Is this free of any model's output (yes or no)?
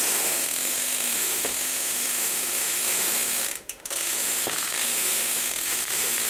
no